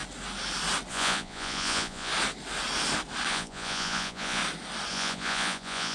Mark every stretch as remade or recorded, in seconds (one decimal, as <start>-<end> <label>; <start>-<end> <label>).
0.0-0.9 recorded; 0.9-2.1 remade; 2.1-3.3 recorded; 3.3-4.4 remade; 4.4-4.9 recorded; 4.9-5.9 remade